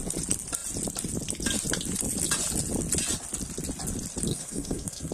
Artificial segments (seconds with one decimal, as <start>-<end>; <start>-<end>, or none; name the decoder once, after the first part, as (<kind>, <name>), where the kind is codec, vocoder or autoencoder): 4.3-5.1 (codec, SNAC)